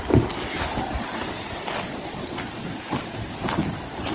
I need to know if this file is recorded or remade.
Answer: recorded